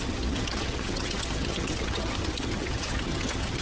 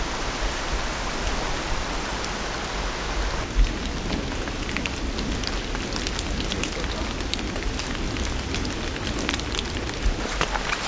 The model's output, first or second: first